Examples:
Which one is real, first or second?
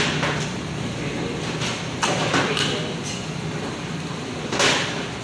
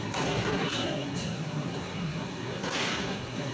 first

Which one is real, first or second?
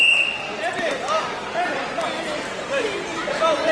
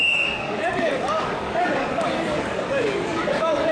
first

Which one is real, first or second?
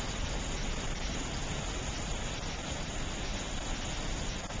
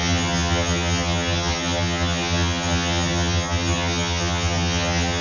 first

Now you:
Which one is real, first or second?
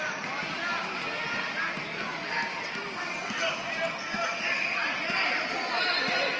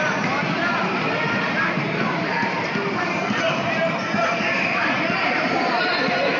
first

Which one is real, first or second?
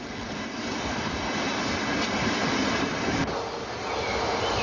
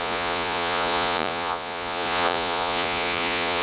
first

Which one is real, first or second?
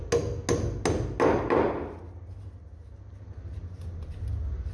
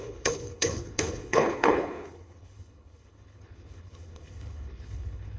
first